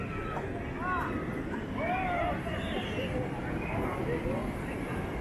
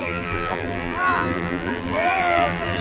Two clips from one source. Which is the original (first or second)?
first